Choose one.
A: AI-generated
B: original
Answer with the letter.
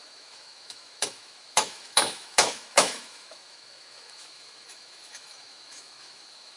A